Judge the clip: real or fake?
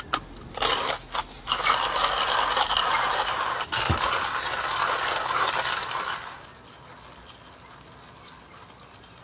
real